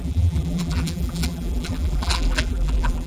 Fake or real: fake